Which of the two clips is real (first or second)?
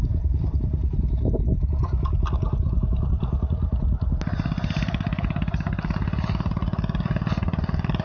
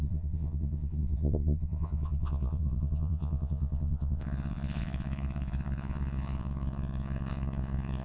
first